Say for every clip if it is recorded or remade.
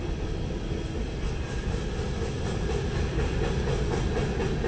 recorded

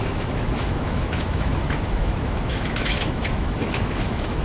remade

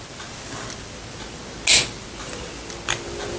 recorded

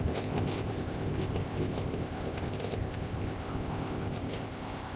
remade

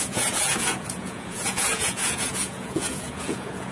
remade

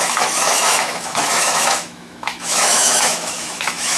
remade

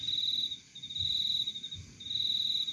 recorded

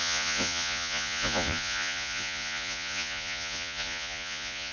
remade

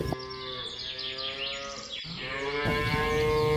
recorded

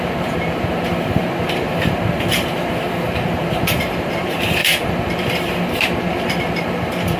remade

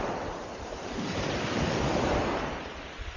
remade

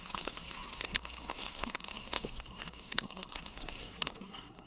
remade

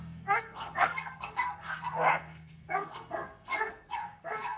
remade